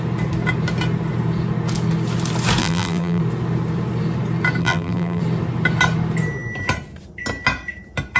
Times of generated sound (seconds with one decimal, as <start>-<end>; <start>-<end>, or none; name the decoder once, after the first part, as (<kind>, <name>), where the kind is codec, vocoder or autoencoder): 2.6-3.2 (vocoder, BigVGAN v2); 4.6-5.2